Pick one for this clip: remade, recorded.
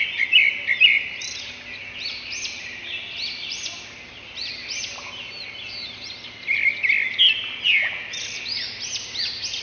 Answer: recorded